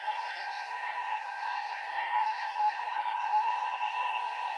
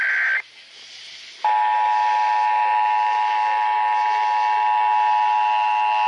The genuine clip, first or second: second